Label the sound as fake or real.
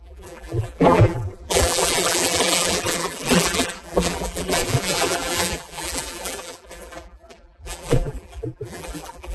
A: fake